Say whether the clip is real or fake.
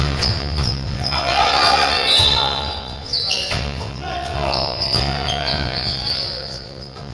fake